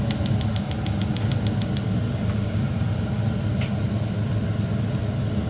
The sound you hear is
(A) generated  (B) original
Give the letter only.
B